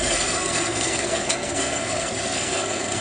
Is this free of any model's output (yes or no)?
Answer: no